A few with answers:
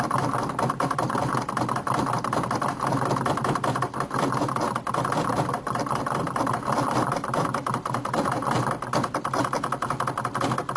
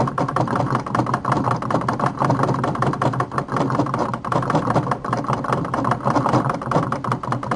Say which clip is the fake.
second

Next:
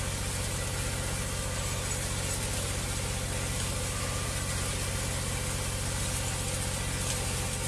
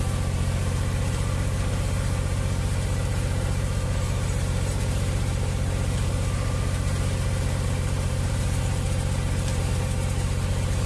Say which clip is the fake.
second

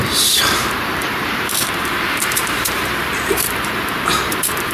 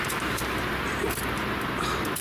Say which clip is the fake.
first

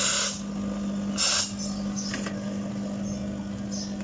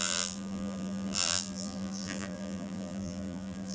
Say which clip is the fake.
second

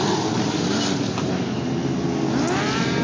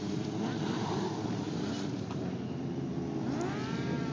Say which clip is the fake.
second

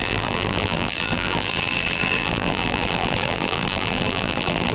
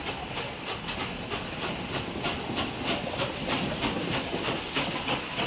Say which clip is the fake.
first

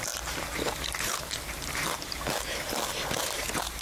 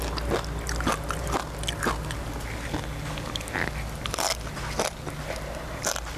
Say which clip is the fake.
first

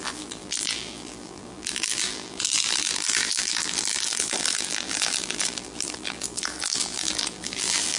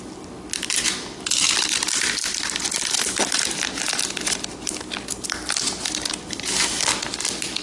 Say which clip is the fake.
first